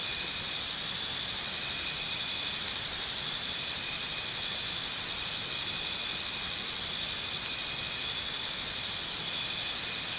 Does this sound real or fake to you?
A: real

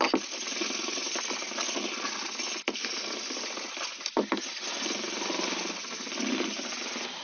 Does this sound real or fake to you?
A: real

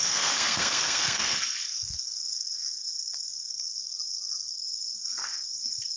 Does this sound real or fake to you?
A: fake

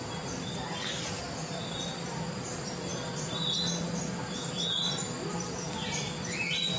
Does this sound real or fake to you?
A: real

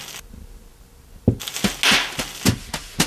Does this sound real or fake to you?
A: real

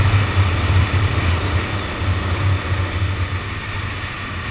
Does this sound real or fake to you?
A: real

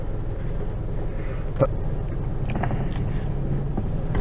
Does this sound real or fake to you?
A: real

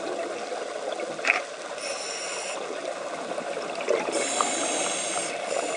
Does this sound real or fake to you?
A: real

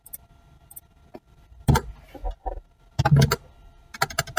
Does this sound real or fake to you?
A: real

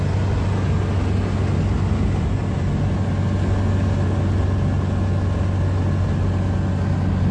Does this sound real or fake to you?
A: real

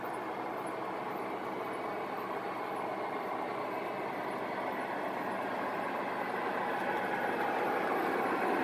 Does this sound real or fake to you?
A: real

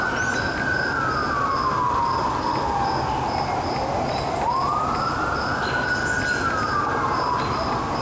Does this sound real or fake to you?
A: real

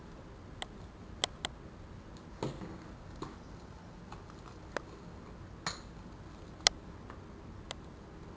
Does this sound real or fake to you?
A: real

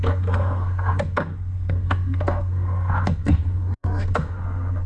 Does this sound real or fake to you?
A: fake